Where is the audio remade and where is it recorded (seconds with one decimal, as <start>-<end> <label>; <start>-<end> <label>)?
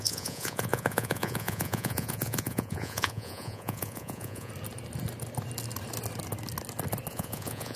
0.0-4.5 remade; 4.5-7.1 recorded; 7.1-7.8 remade